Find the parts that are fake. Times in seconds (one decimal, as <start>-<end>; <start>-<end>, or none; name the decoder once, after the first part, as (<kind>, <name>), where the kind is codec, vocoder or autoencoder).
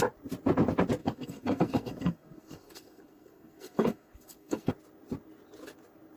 1.0-4.7 (codec, SNAC)